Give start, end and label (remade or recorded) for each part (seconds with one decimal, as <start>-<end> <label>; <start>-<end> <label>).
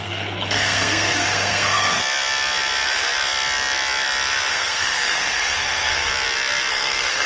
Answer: 0.0-2.0 remade; 2.0-4.5 recorded; 4.5-6.1 remade; 6.1-6.7 recorded; 6.7-7.3 remade